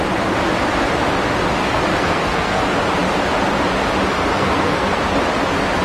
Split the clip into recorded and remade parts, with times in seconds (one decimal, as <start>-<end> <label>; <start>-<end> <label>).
0.0-1.6 recorded; 1.6-2.6 remade; 2.6-4.3 recorded; 4.3-5.0 remade; 5.0-5.8 recorded